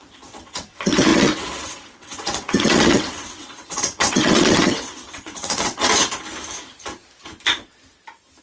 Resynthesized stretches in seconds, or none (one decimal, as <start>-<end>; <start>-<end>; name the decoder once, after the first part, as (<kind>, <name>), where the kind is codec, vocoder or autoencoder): 0.0-5.9 (vocoder, WaveNeXt)